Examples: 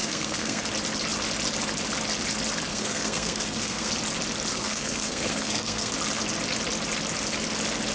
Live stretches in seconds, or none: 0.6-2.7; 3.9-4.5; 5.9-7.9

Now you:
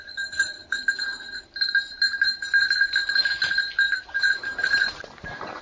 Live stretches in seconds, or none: 0.0-5.6

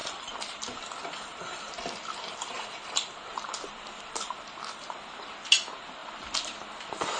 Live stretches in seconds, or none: 4.3-7.2